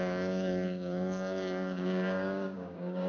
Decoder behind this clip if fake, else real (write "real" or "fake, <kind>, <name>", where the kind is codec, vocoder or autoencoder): fake, codec, DAC